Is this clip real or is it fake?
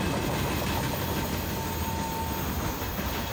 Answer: real